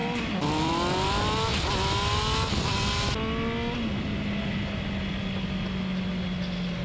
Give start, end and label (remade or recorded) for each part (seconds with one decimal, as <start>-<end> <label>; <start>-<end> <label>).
0.0-6.8 recorded